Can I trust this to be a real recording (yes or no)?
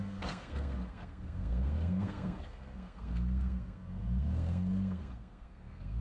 no